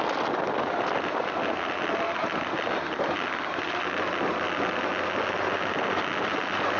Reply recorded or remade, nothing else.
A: recorded